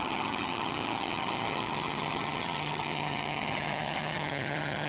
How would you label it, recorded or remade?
remade